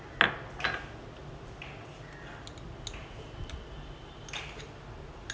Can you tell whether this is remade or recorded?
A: recorded